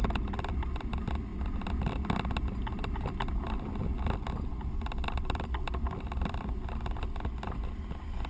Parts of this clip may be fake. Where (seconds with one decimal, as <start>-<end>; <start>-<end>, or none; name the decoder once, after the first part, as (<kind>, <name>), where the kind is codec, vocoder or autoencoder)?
none